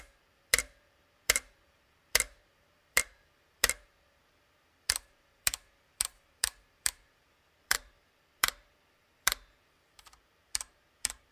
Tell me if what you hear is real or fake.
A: fake